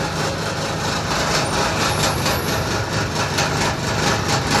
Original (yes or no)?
yes